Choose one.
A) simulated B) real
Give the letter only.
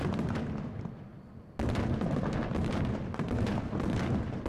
B